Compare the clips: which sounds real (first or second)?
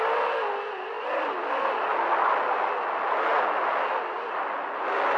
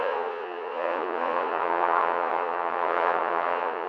first